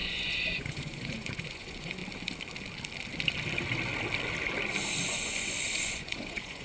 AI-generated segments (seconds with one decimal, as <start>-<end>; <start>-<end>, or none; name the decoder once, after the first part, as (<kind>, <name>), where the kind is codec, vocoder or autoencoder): 0.0-2.0 (vocoder, Vocos); 5.0-6.6